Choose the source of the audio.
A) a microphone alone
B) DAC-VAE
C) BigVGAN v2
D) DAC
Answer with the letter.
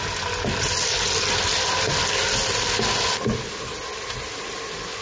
A